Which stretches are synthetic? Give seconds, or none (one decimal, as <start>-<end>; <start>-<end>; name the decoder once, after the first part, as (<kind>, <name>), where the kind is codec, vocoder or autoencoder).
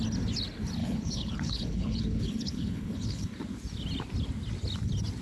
0.8-3.3 (codec, HILCodec)